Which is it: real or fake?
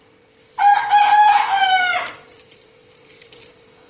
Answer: fake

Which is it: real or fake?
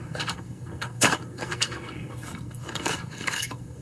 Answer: fake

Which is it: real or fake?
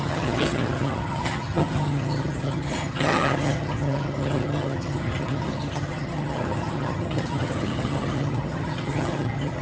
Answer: fake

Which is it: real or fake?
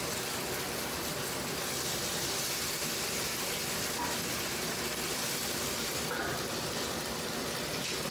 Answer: real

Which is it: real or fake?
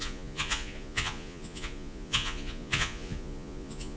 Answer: fake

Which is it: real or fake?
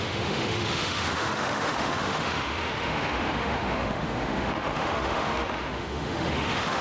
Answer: fake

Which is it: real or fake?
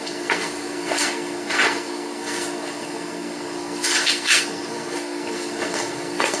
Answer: fake